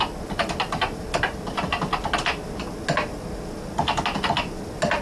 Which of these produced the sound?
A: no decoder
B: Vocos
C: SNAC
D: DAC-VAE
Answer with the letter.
A